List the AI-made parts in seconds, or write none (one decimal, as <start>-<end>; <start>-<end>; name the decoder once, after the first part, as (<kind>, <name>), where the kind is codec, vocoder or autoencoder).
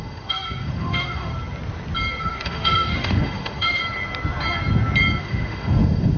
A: 0.0-1.3 (autoencoder, DAC-VAE); 2.2-3.8; 5.2-6.2